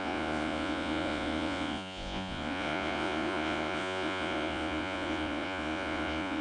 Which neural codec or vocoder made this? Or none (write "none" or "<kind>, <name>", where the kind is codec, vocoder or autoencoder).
vocoder, Vocos